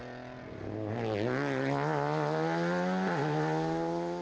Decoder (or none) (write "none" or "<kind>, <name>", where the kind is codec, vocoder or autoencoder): none